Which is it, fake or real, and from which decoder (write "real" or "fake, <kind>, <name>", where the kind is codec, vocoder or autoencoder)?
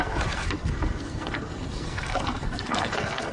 fake, codec, SNAC